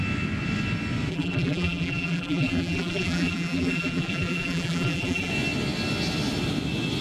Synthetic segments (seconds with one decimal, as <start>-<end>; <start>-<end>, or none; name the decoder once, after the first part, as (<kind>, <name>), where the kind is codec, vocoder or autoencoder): 1.1-5.3 (vocoder, BigVGAN v2)